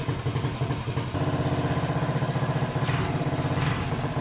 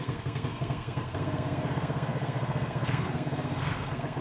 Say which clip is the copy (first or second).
second